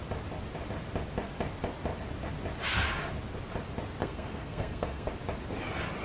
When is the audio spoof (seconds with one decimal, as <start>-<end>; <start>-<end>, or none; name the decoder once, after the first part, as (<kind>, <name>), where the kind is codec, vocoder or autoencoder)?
4.0-5.1 (codec, SNAC)